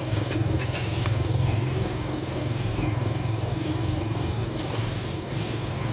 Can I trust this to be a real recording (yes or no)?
no